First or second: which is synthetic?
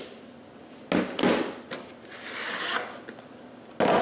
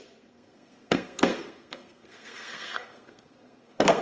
second